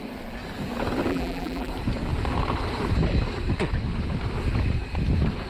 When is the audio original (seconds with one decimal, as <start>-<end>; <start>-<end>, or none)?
0.0-1.1; 1.7-5.5